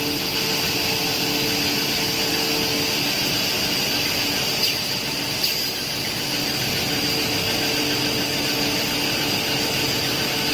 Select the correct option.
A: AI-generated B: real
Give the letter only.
B